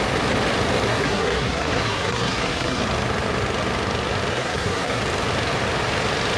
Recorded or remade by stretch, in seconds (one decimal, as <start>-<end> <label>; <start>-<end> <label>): 0.0-0.9 recorded; 0.9-2.8 remade; 2.8-4.3 recorded; 4.3-5.0 remade; 5.0-6.4 recorded